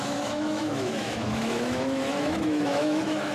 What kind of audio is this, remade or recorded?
remade